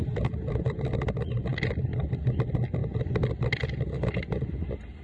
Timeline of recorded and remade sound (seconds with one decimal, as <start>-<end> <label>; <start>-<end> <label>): 0.0-5.0 recorded